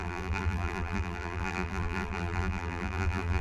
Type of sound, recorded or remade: remade